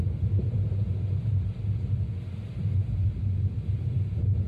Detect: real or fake real